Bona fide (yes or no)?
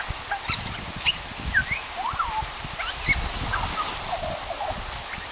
yes